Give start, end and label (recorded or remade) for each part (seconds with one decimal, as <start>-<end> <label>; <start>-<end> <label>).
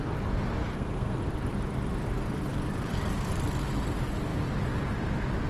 0.0-0.6 recorded; 0.6-1.2 remade; 1.2-5.5 recorded